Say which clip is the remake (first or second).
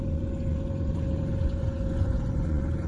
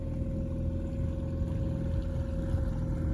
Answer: first